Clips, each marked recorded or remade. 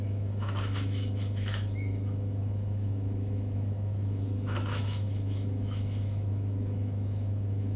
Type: remade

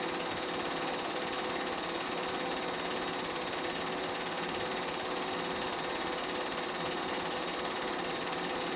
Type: recorded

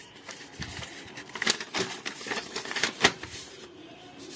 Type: remade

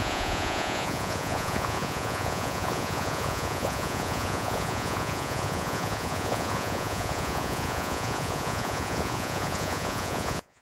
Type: remade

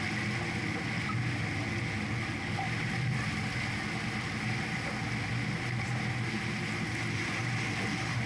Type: recorded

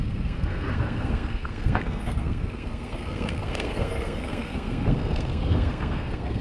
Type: remade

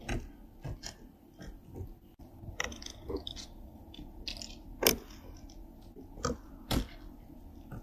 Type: recorded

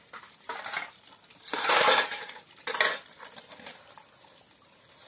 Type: recorded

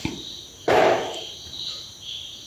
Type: remade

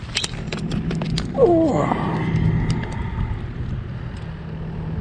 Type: recorded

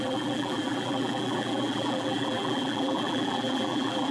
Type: remade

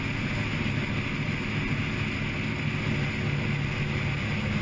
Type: recorded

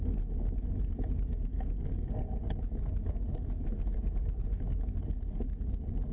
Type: recorded